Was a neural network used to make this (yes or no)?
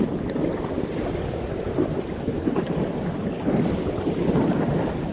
yes